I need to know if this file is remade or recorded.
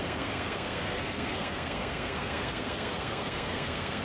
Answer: remade